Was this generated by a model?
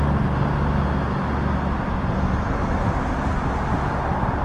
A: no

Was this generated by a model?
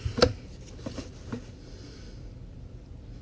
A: no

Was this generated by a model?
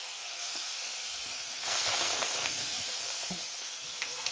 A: yes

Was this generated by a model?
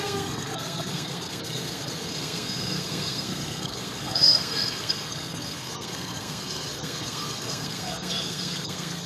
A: yes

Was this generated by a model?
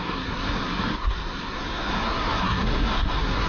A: yes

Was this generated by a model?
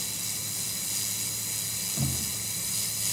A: no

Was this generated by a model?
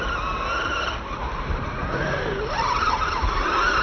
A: no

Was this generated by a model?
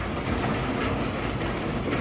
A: no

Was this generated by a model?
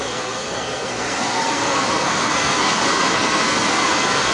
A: yes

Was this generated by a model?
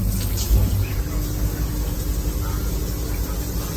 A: no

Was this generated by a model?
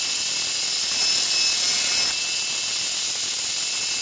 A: no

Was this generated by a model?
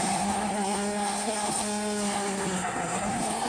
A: yes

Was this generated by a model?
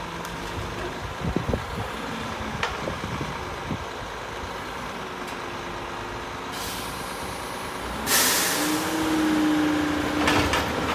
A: no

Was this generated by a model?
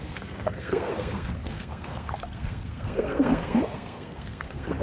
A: yes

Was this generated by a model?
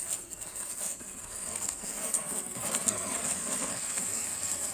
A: yes